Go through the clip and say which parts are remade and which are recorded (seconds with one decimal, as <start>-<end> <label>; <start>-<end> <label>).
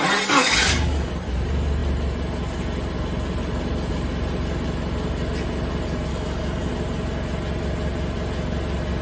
0.0-0.4 recorded; 0.4-1.1 remade; 1.1-6.1 recorded; 6.1-6.7 remade; 6.7-9.0 recorded